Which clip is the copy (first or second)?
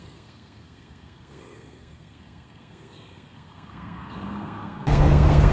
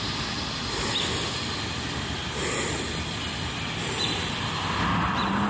first